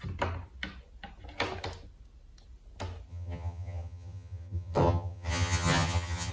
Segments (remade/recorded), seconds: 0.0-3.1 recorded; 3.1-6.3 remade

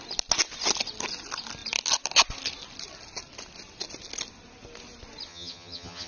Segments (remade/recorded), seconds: 0.0-5.3 recorded; 5.3-6.1 remade